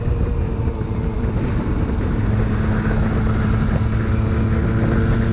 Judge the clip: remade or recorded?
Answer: recorded